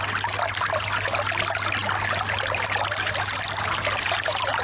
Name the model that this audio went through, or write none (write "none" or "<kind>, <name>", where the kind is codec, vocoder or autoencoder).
none